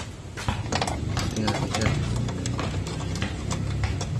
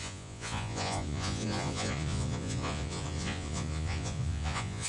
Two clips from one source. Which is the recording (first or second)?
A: first